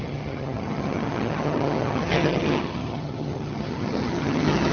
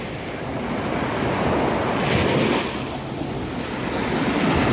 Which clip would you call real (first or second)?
second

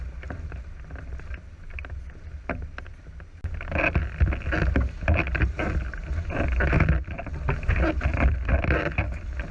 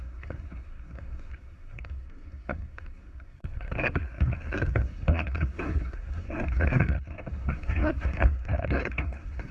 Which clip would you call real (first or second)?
first